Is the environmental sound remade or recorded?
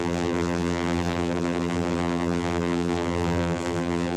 remade